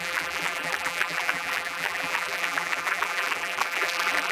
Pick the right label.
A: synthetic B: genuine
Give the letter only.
A